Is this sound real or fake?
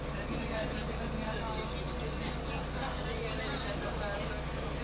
real